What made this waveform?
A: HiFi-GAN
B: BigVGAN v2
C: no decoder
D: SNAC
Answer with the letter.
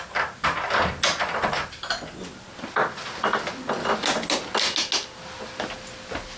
C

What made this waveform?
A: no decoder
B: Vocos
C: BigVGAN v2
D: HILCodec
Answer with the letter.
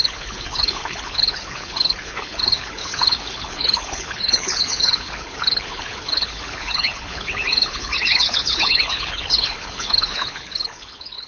D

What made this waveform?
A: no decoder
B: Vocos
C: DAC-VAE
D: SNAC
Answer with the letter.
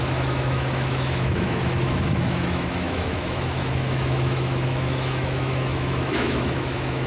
C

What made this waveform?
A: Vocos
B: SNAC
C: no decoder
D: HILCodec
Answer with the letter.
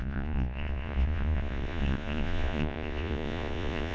A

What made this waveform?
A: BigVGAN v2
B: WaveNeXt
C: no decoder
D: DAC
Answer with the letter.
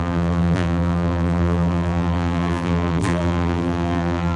A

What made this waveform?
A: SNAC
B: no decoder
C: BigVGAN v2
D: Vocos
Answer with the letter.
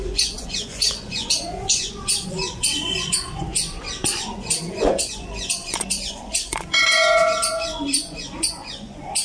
D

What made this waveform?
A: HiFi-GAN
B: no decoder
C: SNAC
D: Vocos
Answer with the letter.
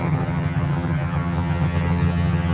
A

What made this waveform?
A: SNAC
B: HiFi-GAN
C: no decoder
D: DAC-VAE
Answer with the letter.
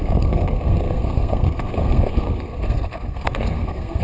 A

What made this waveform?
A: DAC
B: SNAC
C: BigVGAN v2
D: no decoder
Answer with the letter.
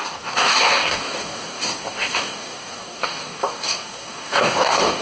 A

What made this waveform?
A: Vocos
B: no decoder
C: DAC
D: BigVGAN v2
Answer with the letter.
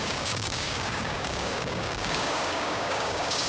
C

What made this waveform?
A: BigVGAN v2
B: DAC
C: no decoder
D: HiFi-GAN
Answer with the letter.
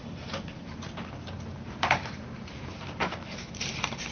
A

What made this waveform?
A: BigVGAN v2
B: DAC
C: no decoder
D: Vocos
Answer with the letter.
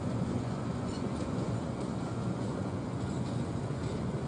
D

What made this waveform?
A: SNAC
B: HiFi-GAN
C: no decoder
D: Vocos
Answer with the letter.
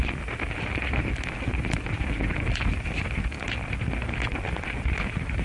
C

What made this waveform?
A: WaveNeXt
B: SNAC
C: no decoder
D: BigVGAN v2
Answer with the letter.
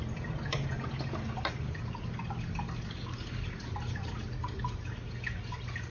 C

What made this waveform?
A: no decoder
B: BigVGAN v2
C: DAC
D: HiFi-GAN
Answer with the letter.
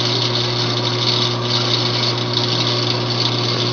A